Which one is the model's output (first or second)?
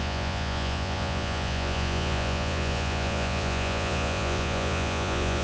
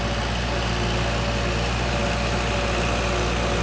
first